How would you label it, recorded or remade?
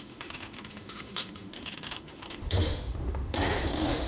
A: remade